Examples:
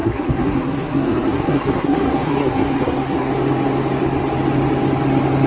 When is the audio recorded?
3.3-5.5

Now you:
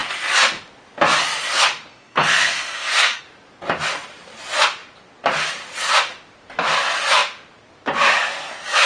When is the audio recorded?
0.0-1.9; 3.2-8.9

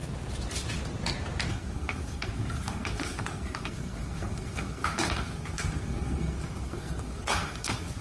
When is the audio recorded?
0.0-1.5

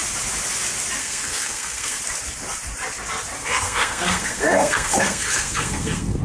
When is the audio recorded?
0.0-1.0; 2.0-3.4

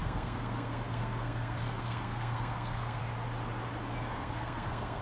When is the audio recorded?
3.0-4.1

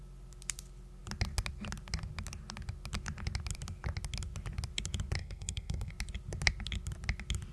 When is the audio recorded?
0.0-5.2; 5.9-7.5